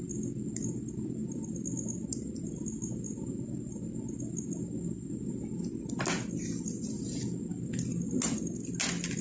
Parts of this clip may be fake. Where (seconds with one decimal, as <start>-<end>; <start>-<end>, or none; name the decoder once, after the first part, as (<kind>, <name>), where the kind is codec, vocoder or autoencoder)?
none